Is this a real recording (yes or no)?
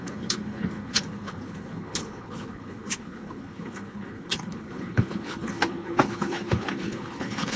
no